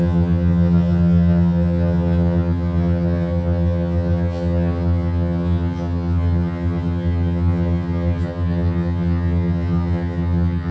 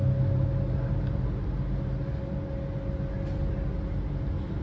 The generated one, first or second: first